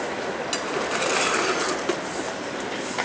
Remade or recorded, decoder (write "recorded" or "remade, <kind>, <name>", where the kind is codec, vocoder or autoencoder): recorded